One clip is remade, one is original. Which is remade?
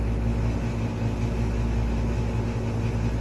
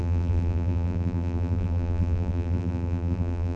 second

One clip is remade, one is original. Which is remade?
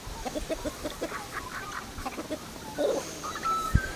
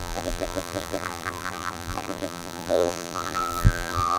second